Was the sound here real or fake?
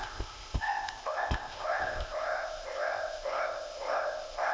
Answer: fake